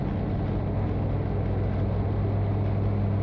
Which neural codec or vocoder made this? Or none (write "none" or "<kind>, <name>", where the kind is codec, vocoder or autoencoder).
none